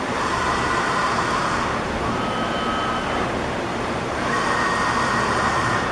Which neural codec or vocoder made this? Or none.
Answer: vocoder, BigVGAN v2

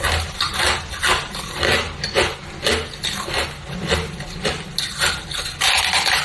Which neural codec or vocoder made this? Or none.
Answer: none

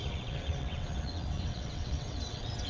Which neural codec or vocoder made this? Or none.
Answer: vocoder, WaveNeXt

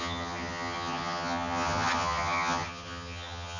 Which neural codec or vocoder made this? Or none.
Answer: vocoder, HiFi-GAN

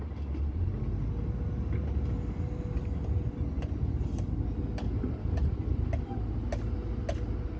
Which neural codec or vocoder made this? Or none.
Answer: none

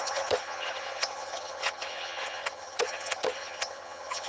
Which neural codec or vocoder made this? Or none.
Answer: vocoder, HiFi-GAN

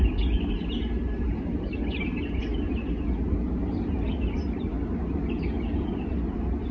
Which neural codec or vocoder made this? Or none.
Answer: none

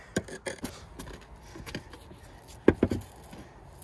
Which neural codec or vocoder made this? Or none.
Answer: none